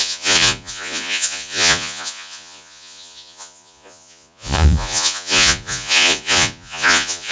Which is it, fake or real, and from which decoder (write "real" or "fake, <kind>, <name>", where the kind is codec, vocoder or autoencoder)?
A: fake, vocoder, Vocos